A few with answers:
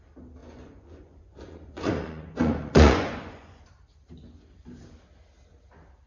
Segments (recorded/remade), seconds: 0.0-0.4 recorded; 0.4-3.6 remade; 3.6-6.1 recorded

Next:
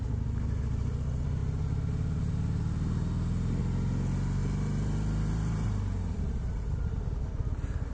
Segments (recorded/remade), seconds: 0.0-4.4 recorded; 4.4-6.9 remade; 6.9-7.9 recorded

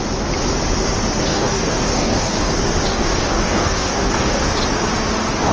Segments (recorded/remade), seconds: 0.0-1.3 recorded; 1.3-2.5 remade; 2.5-2.9 recorded; 2.9-4.4 remade; 4.4-5.5 recorded

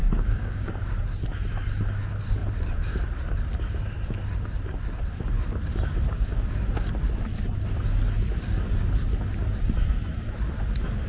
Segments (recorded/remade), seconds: 0.0-0.7 remade; 0.7-11.1 recorded

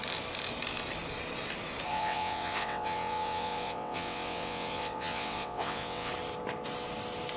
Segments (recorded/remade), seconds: 0.0-1.9 recorded; 1.9-6.1 remade; 6.1-7.4 recorded